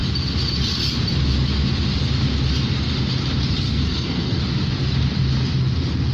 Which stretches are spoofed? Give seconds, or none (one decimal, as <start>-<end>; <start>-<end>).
3.7-4.4